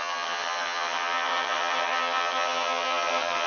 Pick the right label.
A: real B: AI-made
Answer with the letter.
B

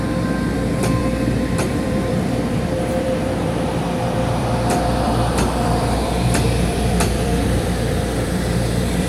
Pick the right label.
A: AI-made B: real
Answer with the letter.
A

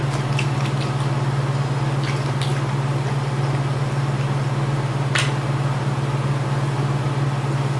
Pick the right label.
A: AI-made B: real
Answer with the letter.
B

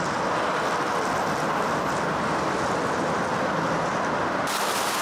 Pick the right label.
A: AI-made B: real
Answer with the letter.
B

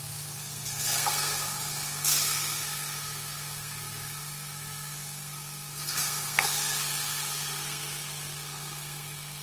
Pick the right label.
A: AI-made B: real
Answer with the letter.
A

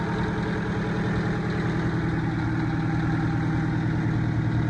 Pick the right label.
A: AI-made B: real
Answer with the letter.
B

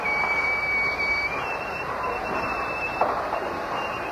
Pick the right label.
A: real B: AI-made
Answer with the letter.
A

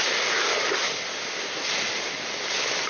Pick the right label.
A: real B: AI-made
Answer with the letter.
A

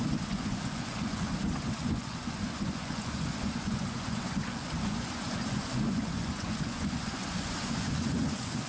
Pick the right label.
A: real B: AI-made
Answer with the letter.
B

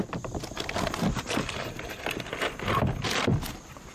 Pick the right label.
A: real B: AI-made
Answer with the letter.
A